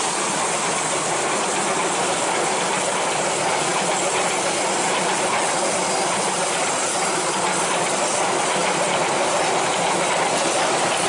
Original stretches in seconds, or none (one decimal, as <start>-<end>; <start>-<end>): 0.0-11.1